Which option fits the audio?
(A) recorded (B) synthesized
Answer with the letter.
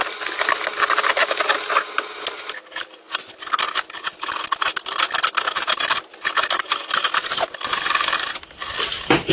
A